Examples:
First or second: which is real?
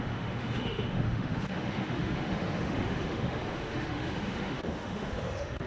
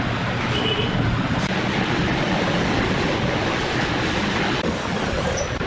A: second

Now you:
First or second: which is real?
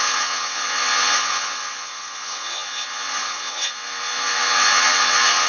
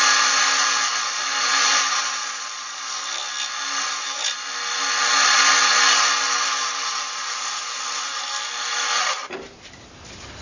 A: second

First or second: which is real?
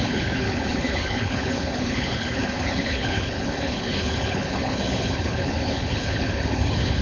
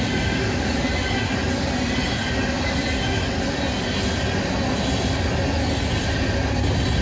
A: second